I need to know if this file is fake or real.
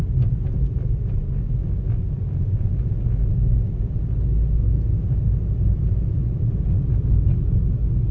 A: real